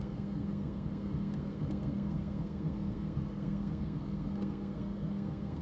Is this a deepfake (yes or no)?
yes